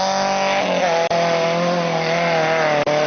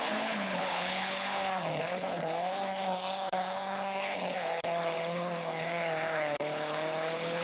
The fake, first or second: second